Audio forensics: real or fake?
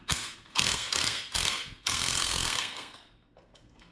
fake